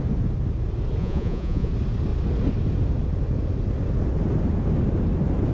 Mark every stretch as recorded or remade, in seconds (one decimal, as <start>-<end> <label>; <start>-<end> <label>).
0.0-1.0 recorded; 1.0-1.7 remade; 1.7-5.5 recorded